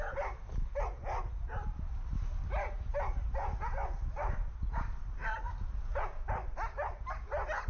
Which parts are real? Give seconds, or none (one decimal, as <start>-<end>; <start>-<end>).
0.0-5.2; 6.9-7.7